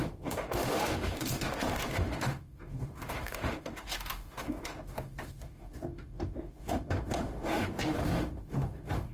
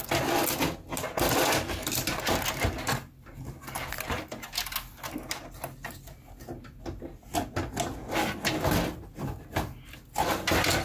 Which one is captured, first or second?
second